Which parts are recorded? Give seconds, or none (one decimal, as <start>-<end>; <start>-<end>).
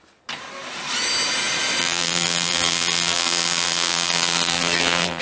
0.0-1.8